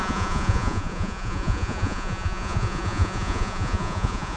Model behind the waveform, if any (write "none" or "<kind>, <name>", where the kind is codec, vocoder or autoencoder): vocoder, Vocos